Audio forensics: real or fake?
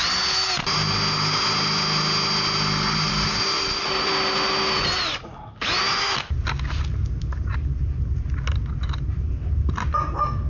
real